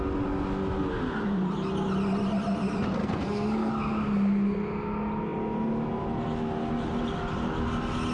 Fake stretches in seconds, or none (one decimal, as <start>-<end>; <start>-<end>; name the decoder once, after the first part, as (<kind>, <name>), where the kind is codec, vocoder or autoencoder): 3.0-3.7 (codec, SNAC)